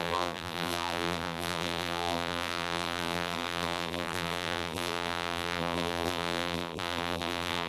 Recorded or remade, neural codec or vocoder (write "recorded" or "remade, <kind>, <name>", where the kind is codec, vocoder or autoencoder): remade, vocoder, BigVGAN v2